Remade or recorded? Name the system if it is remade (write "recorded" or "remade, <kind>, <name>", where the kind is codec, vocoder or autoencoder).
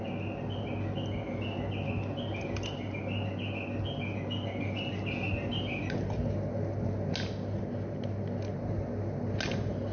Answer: recorded